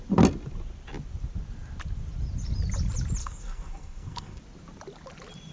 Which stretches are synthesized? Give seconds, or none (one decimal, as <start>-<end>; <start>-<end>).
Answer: 3.2-4.4